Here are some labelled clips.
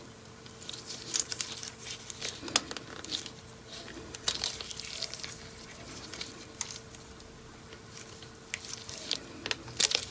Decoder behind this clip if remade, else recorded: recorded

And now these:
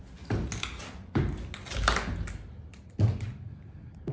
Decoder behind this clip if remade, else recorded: recorded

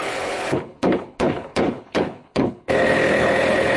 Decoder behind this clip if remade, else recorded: remade, codec, HILCodec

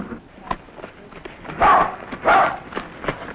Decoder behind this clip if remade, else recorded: recorded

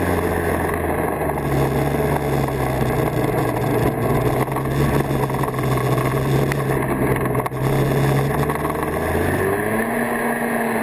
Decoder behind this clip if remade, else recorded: recorded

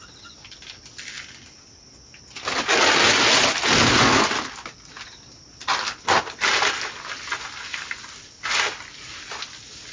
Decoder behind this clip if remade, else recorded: recorded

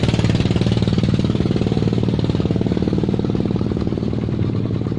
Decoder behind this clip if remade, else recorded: recorded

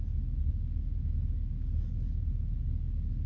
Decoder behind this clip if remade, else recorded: recorded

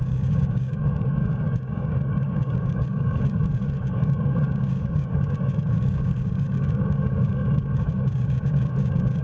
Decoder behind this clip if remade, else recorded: remade, codec, DAC